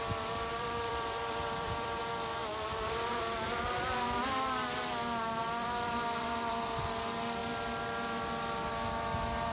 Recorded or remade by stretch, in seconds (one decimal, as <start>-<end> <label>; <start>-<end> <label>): 0.0-0.5 recorded; 0.5-2.0 remade; 2.0-2.4 recorded; 2.4-3.2 remade; 3.2-5.4 recorded; 5.4-6.5 remade; 6.5-9.5 recorded